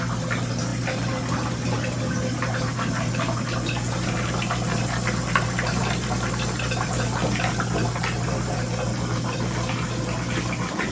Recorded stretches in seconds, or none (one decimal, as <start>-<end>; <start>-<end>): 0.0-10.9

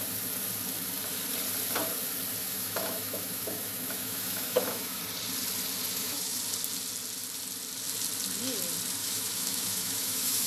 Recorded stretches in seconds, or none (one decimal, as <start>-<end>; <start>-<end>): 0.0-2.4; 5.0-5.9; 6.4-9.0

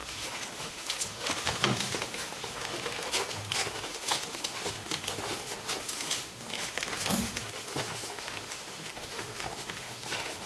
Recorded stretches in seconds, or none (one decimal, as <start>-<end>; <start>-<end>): none

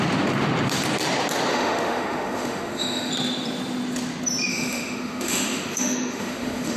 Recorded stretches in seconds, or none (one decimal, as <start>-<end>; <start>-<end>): 0.0-1.5; 3.1-4.5

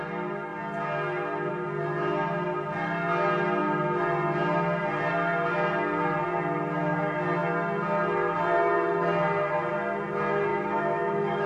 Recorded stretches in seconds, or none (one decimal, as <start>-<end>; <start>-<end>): 0.0-10.5